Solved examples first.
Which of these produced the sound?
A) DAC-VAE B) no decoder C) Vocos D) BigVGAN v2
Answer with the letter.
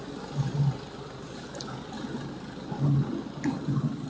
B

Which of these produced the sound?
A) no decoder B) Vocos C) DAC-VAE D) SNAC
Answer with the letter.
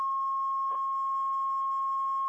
C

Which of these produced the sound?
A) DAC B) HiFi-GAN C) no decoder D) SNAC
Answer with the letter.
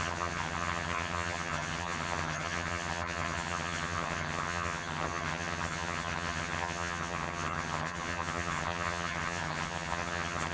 B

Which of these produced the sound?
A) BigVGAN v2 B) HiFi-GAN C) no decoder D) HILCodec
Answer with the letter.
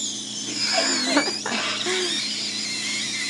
C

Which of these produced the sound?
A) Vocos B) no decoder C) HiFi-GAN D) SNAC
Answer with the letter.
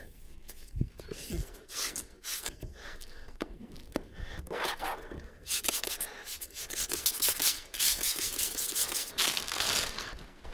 D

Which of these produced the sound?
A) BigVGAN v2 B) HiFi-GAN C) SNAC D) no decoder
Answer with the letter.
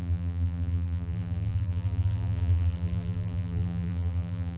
A